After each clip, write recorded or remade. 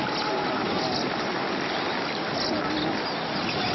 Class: recorded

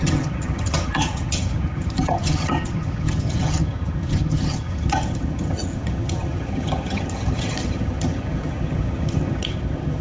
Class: remade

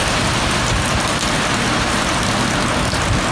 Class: recorded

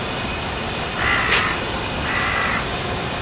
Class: recorded